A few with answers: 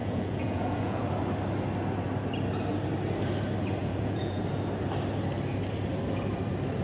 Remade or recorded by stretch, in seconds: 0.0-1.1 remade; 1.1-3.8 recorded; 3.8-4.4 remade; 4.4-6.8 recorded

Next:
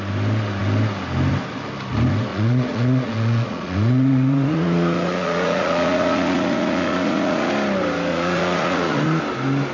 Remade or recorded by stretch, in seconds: 0.0-2.3 recorded; 2.3-7.5 remade; 7.5-8.1 recorded; 8.1-9.2 remade; 9.2-9.7 recorded

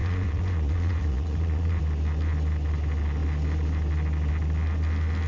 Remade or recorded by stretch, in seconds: 0.0-1.8 remade; 1.8-5.3 recorded

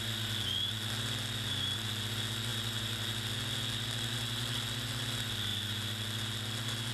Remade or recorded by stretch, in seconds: 0.0-6.9 recorded

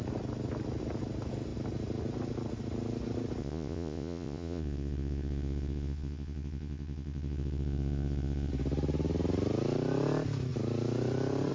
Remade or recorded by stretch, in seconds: 0.0-3.4 recorded; 3.4-8.5 remade; 8.5-11.5 recorded

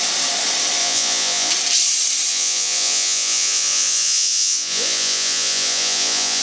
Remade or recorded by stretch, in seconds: 0.0-0.8 recorded; 0.8-1.5 remade; 1.5-2.3 recorded; 2.3-6.4 remade

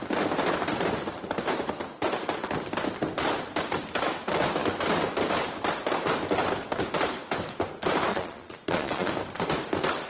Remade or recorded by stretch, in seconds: 0.0-8.1 recorded; 8.1-9.1 remade; 9.1-10.1 recorded